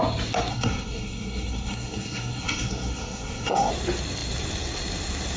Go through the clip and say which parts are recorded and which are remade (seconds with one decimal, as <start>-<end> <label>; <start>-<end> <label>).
0.0-0.5 recorded; 0.5-3.7 remade; 3.7-5.4 recorded